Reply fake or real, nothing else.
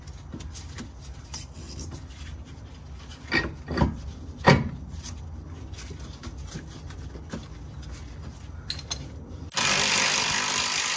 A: real